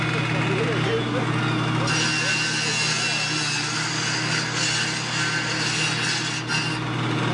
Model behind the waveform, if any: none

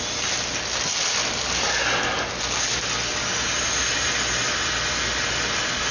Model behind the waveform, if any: none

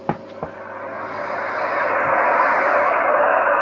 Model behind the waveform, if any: none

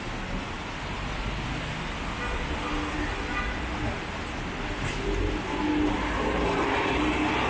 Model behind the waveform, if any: none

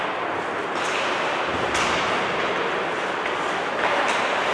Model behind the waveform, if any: none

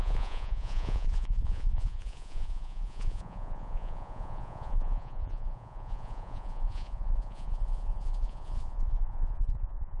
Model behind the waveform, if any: vocoder, Vocos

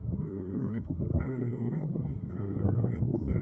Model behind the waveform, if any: codec, SNAC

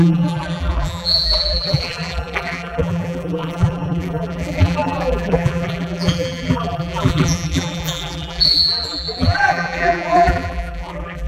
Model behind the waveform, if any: vocoder, BigVGAN v2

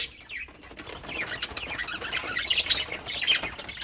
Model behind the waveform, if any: none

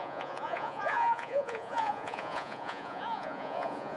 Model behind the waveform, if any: vocoder, Vocos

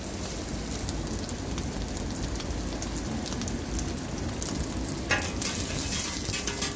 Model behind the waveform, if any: none